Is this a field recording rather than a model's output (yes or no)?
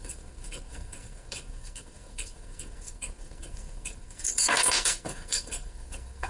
no